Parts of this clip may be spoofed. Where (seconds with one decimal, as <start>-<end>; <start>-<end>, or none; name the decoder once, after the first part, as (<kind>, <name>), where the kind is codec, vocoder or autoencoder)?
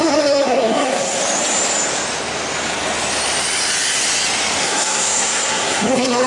0.0-1.2 (codec, SNAC); 4.6-6.3